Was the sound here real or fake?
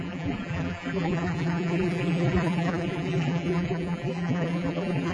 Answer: fake